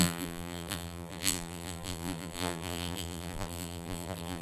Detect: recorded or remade remade